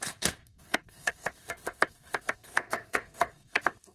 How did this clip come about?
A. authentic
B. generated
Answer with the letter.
B